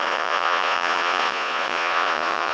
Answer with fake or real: fake